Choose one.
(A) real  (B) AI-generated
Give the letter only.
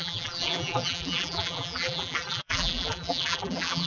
B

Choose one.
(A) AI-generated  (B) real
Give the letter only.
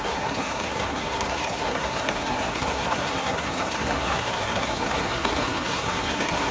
A